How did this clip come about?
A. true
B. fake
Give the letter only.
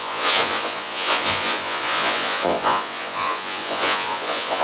B